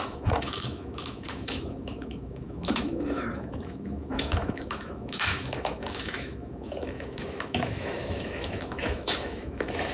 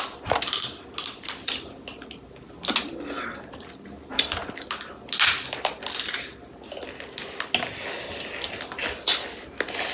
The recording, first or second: second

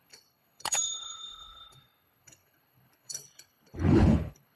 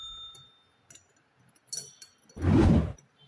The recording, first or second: second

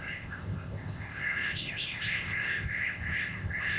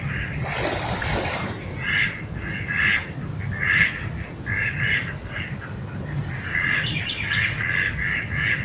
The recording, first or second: second